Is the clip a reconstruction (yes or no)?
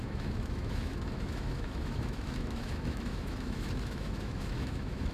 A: yes